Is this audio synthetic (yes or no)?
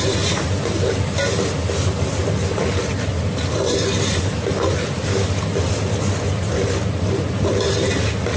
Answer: no